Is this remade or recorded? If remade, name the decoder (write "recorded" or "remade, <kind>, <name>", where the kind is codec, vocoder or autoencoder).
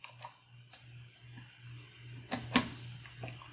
recorded